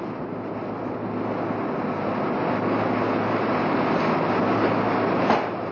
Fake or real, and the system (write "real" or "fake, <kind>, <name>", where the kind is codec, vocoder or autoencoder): real